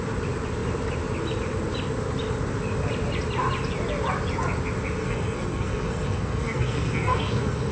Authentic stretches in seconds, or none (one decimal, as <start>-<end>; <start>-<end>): 0.0-5.0